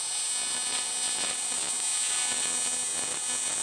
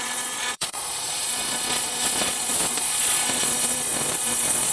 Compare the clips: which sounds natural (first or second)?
first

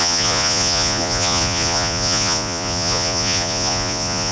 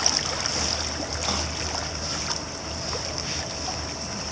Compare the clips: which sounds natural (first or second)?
second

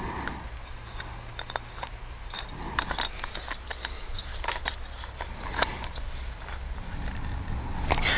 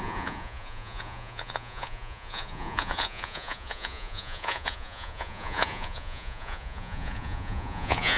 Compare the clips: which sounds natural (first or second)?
first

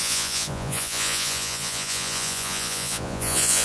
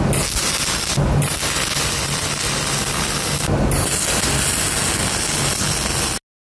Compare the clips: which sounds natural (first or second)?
second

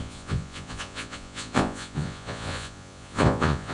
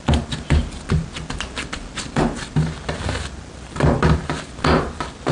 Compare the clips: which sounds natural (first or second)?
second